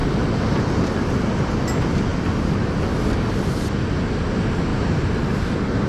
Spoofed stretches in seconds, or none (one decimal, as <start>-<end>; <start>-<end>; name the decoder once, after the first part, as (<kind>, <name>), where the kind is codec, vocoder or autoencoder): 0.0-0.9 (vocoder, BigVGAN v2); 4.7-5.9